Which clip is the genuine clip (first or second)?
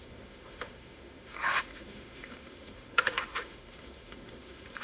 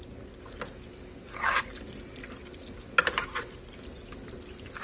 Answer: second